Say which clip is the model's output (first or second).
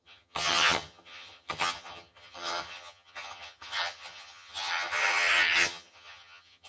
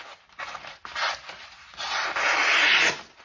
first